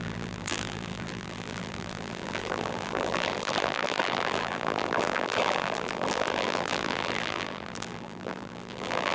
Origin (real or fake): fake